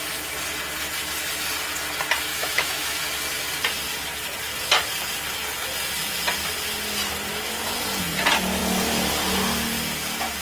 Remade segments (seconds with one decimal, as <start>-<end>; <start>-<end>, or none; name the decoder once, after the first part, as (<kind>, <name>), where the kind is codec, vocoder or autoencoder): 2.3-2.9 (autoencoder, DAC-VAE)